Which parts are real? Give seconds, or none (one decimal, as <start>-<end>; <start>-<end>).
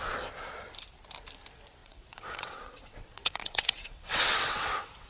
0.0-1.8